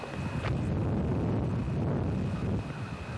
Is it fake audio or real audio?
real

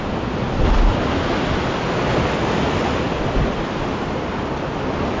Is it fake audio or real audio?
real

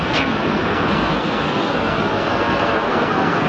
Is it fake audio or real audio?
fake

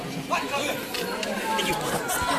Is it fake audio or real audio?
real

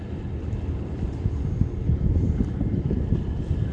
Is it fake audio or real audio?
real